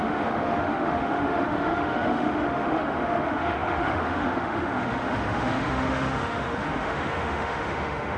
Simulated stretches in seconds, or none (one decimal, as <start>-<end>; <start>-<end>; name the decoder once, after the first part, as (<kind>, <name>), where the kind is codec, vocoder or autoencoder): 0.0-8.2 (autoencoder, DAC-VAE)